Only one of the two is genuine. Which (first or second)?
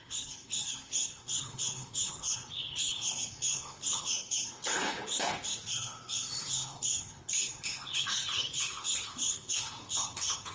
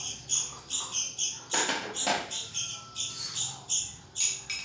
second